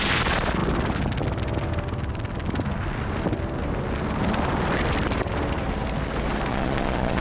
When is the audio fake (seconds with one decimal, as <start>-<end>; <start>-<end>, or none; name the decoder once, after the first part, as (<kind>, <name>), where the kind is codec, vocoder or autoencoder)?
6.5-7.2 (vocoder, Vocos)